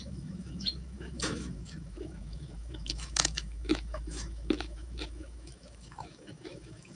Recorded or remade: remade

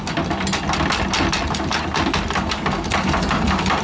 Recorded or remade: recorded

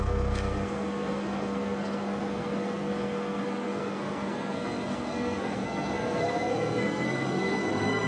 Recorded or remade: remade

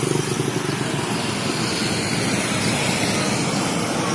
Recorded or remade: recorded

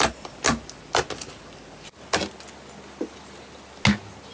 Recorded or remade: recorded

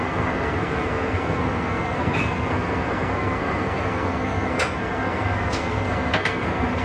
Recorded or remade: remade